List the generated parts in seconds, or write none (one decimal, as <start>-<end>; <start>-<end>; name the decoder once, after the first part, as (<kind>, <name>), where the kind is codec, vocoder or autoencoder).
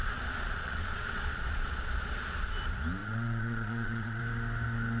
0.0-2.5 (vocoder, Vocos); 3.0-4.2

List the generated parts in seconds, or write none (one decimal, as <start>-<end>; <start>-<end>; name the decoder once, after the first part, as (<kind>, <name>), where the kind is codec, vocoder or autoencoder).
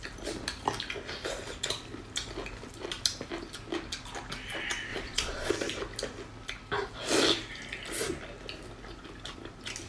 4.9-5.5 (vocoder, Vocos)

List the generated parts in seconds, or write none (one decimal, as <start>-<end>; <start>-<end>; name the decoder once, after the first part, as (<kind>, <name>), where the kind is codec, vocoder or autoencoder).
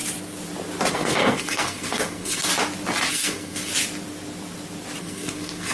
0.9-2.5 (codec, SNAC); 3.1-3.7; 5.0-5.7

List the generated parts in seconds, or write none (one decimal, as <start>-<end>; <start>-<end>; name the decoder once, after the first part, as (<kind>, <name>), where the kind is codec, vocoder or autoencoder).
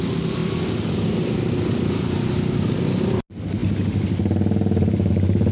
none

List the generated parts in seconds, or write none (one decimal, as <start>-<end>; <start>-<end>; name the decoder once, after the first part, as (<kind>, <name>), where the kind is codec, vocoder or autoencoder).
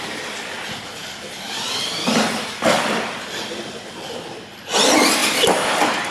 none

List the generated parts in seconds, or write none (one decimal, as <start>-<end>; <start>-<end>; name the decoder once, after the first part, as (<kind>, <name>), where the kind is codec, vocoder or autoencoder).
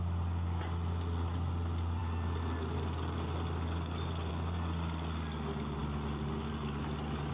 none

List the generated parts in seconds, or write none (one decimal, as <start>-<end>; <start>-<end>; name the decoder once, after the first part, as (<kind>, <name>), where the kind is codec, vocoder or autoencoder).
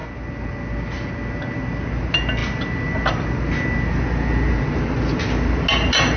none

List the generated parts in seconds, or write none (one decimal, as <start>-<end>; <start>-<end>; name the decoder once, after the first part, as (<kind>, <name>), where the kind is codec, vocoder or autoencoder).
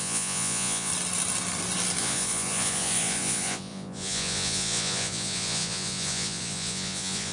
0.0-0.9 (vocoder, Vocos); 2.0-7.3